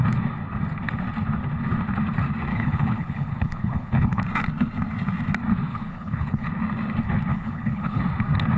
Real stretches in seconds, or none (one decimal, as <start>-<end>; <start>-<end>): 0.0-2.5; 4.2-5.7; 6.5-7.3; 8.0-8.6